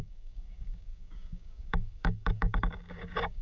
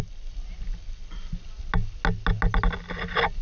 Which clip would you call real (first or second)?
second